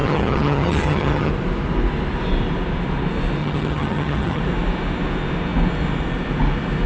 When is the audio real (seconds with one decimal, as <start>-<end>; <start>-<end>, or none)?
1.3-3.4; 4.4-6.9